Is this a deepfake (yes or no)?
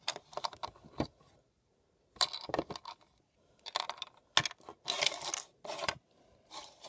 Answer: no